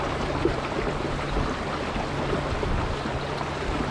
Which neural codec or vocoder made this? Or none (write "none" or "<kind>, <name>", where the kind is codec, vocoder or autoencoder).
none